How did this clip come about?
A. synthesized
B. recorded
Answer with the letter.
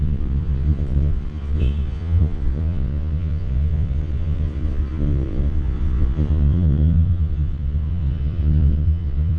A